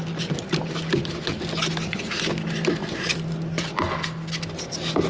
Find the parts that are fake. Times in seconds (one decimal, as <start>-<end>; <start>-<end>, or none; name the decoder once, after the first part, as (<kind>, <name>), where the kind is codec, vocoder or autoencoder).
none